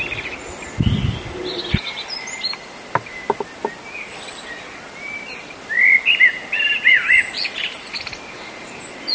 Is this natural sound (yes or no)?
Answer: yes